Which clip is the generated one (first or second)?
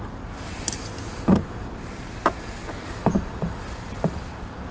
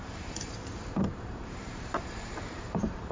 second